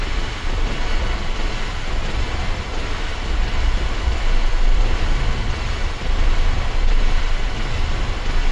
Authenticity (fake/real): real